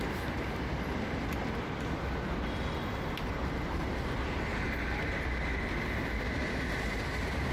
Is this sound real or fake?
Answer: real